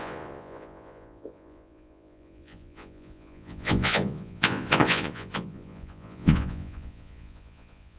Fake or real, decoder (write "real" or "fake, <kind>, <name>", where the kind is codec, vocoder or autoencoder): fake, vocoder, Vocos